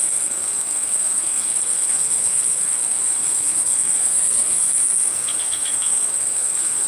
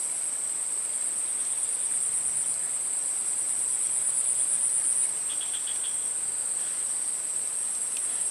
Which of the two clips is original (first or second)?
second